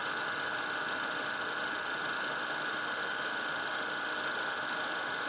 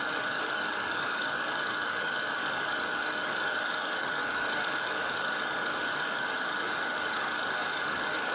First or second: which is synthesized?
second